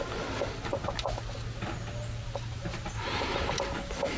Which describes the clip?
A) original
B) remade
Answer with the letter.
A